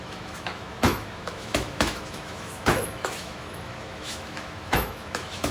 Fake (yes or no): yes